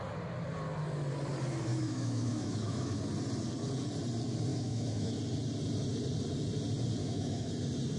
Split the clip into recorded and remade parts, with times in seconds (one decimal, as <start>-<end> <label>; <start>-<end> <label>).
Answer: 0.0-1.7 recorded; 1.7-3.0 remade; 3.0-4.5 recorded; 4.5-5.2 remade; 5.2-7.0 recorded; 7.0-7.5 remade; 7.5-8.0 recorded